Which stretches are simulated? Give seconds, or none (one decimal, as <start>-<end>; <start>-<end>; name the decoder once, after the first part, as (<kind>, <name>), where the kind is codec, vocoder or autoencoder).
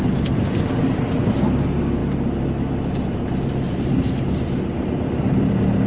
none